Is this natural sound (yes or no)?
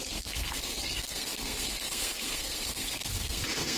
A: no